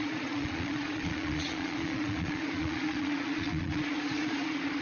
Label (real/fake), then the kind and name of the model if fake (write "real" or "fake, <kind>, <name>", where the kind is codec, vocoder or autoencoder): fake, vocoder, Vocos